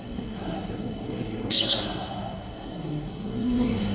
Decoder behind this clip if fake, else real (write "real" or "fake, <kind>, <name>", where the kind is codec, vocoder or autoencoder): fake, codec, SNAC